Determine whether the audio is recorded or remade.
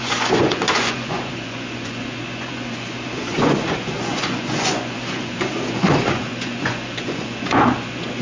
remade